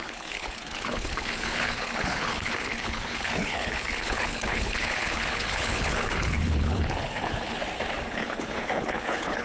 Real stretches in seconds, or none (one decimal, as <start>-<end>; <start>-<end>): 7.6-8.1